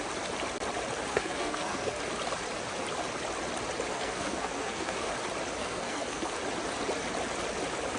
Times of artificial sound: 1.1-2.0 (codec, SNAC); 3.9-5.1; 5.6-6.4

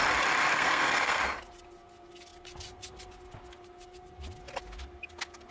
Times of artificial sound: 0.5-1.2 (codec, SNAC)

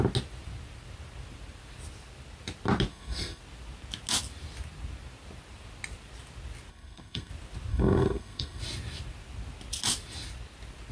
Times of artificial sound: 2.9-3.4 (codec, SNAC); 6.7-7.3; 7.7-8.6

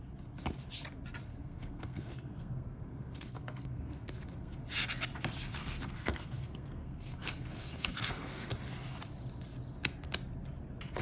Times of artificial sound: 1.3-4.6 (codec, SNAC); 5.5-8.5

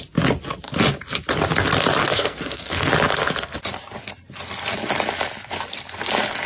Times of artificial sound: 2.0-2.9 (codec, SNAC)

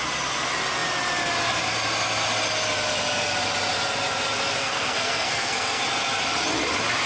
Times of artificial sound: 4.6-5.8 (codec, SNAC)